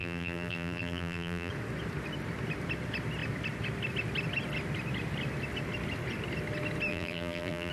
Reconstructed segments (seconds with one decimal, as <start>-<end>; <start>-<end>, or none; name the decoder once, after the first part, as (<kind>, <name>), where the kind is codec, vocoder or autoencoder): 0.0-1.5 (vocoder, BigVGAN v2); 6.9-7.7